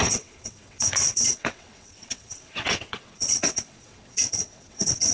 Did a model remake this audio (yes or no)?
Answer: yes